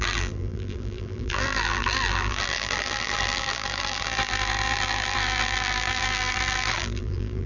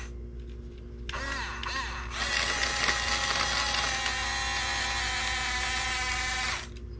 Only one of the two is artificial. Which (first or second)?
first